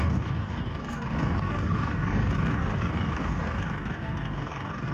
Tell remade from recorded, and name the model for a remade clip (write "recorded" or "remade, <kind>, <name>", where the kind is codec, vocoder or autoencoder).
remade, codec, DAC